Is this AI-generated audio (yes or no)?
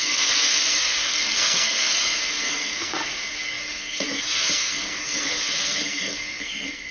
yes